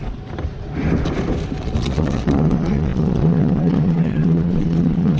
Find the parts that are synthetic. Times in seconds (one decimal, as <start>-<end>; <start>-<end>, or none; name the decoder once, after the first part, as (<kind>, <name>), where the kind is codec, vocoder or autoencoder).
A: 1.6-5.2 (vocoder, Vocos)